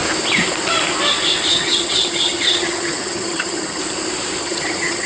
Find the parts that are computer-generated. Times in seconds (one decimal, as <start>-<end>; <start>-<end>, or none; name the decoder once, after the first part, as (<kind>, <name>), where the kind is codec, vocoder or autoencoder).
1.5-3.8 (vocoder, HiFi-GAN); 4.4-5.1